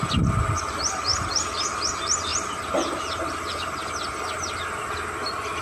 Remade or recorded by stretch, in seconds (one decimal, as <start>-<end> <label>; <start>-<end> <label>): 0.0-1.1 recorded; 1.1-1.8 remade; 1.8-2.3 recorded; 2.3-3.9 remade; 3.9-5.6 recorded